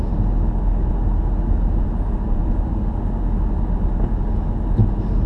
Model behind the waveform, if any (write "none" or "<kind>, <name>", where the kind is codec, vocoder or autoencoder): none